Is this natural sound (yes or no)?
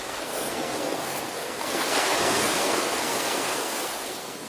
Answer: no